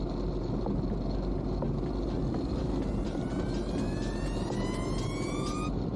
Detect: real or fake real